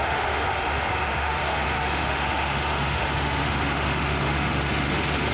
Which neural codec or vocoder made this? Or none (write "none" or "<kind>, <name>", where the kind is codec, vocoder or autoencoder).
autoencoder, DAC-VAE